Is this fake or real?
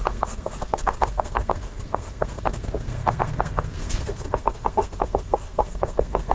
fake